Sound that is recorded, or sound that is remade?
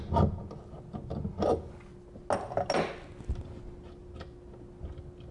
recorded